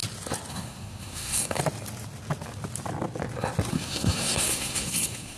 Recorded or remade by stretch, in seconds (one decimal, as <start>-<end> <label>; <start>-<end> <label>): 0.0-0.5 recorded; 0.5-1.6 remade; 1.6-3.7 recorded; 3.7-5.4 remade

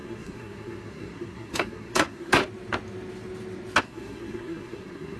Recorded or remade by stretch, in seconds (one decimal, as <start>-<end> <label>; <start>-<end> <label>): 0.0-2.4 remade; 2.4-3.8 recorded; 3.8-5.2 remade

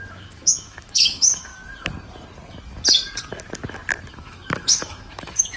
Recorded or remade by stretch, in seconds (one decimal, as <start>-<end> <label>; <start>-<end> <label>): 0.0-1.5 remade; 1.5-4.1 recorded; 4.1-5.6 remade

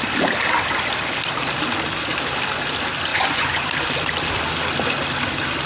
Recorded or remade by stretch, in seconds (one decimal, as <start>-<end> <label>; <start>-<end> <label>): 0.0-3.1 recorded; 3.1-3.6 remade; 3.6-5.7 recorded